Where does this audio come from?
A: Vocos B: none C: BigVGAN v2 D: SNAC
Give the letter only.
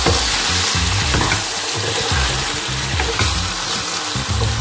B